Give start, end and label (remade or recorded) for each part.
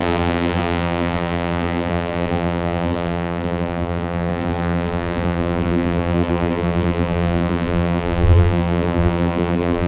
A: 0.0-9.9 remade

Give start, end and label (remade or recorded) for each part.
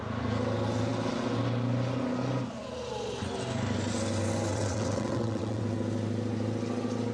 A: 0.0-4.5 recorded; 4.5-5.6 remade; 5.6-7.1 recorded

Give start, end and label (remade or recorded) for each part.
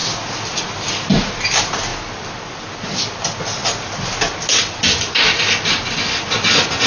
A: 0.0-6.9 recorded